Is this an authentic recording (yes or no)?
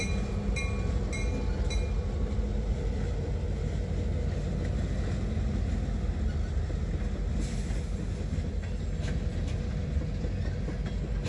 yes